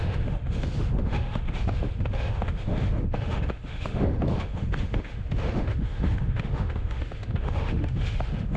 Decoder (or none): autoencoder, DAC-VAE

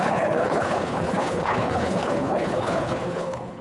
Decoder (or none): codec, HILCodec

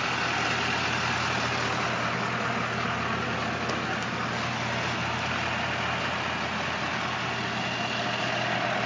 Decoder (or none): none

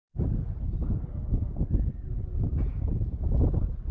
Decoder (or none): none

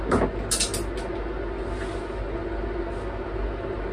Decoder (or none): none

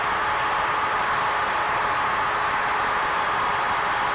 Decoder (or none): none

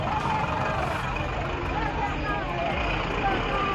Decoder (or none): none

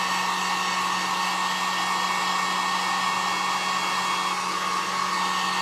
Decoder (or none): none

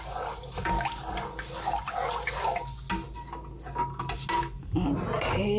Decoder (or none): none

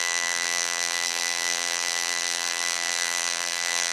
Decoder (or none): vocoder, BigVGAN v2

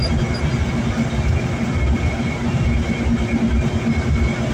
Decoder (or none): none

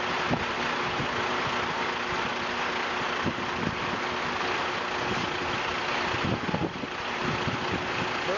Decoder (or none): none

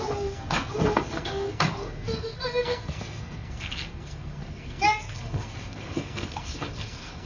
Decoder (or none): codec, SNAC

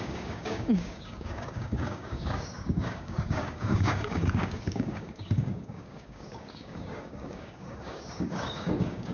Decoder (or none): codec, DAC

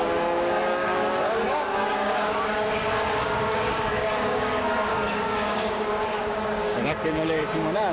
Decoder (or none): codec, DAC